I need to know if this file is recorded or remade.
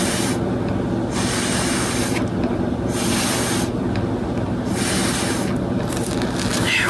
recorded